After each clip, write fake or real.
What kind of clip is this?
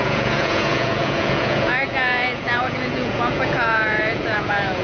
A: fake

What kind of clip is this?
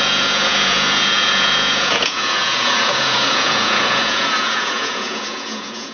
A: fake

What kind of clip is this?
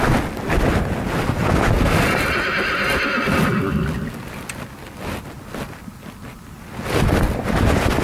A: real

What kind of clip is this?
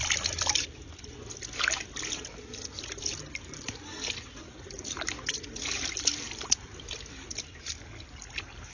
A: real